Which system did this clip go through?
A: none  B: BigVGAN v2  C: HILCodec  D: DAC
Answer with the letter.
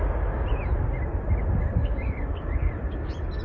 A